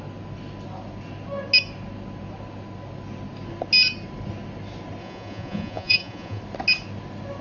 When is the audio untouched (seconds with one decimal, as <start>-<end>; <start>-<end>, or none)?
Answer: 0.0-5.0; 6.4-7.4